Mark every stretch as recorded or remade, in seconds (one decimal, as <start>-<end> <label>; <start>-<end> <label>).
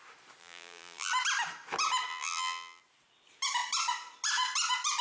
0.0-0.4 recorded; 0.4-1.1 remade; 1.1-2.1 recorded; 2.1-2.8 remade; 2.8-5.0 recorded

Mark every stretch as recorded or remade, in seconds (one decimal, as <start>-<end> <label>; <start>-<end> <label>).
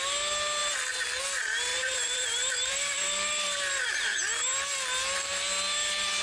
0.0-1.7 recorded; 1.7-3.7 remade; 3.7-6.2 recorded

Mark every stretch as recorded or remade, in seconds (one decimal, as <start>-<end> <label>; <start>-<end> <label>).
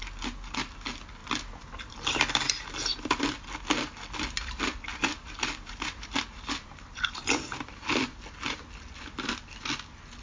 0.0-4.9 recorded; 4.9-8.0 remade; 8.0-10.2 recorded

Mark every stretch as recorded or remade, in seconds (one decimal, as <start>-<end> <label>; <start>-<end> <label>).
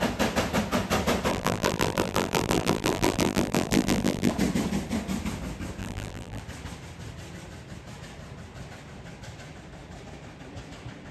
0.0-1.3 recorded; 1.3-4.3 remade; 4.3-5.8 recorded; 5.8-6.4 remade; 6.4-11.1 recorded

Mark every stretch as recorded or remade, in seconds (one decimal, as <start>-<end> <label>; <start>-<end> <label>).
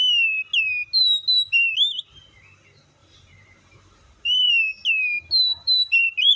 0.0-3.0 recorded; 3.0-4.5 remade; 4.5-5.5 recorded; 5.5-6.4 remade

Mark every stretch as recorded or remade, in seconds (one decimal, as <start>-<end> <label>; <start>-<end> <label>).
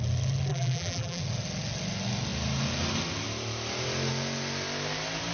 0.0-0.5 recorded; 0.5-1.2 remade; 1.2-5.3 recorded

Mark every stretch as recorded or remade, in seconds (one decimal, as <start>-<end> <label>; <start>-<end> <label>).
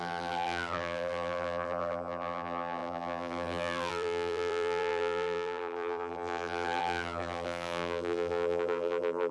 0.0-9.3 remade